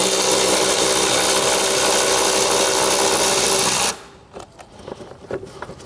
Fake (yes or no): no